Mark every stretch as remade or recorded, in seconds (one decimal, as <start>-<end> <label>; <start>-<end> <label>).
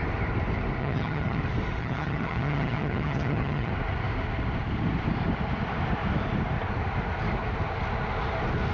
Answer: 0.0-0.8 recorded; 0.8-1.4 remade; 1.4-1.8 recorded; 1.8-3.7 remade; 3.7-8.7 recorded